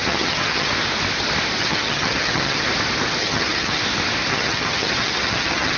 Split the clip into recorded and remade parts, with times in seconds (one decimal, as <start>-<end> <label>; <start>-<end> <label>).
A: 0.0-0.7 remade; 0.7-1.6 recorded; 1.6-2.7 remade; 2.7-3.2 recorded; 3.2-3.8 remade; 3.8-4.3 recorded; 4.3-5.8 remade